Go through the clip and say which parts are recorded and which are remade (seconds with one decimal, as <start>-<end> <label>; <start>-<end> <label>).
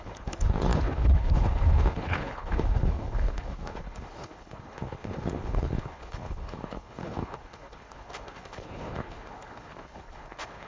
0.0-10.7 remade